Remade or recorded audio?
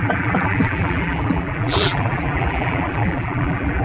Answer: remade